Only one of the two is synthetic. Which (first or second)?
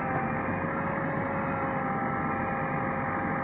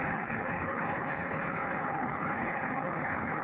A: second